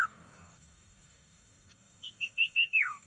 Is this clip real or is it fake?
fake